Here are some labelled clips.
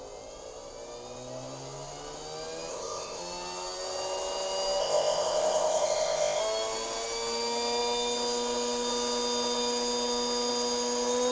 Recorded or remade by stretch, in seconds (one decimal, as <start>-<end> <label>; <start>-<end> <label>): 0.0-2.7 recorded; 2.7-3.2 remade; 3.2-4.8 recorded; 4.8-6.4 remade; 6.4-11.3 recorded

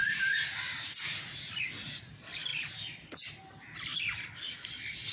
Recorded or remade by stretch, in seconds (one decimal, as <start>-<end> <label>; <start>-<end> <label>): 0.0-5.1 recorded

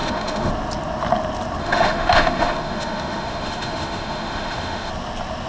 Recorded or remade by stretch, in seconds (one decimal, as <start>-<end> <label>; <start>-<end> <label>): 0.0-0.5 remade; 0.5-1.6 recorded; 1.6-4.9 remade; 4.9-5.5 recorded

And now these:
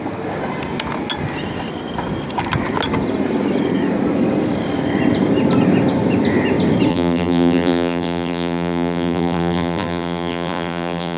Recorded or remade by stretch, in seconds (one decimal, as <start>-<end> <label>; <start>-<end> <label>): 0.0-6.9 recorded; 6.9-11.2 remade

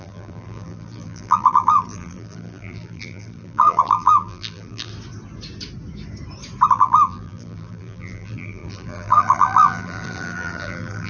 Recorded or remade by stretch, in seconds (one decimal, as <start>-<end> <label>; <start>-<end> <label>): 0.0-4.9 remade; 4.9-6.7 recorded; 6.7-11.1 remade

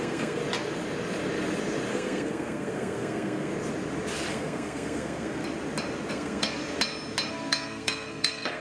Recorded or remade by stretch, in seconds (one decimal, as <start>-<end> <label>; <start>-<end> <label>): 0.0-0.4 remade; 0.4-1.9 recorded; 1.9-3.5 remade; 3.5-4.3 recorded; 4.3-5.4 remade; 5.4-6.1 recorded; 6.1-6.6 remade; 6.6-7.3 recorded; 7.3-8.6 remade